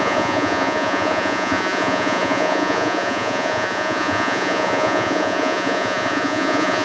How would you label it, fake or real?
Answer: fake